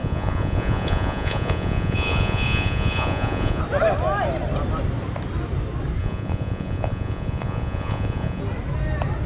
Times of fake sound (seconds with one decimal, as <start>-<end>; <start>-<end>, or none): 0.0-3.6; 6.0-8.4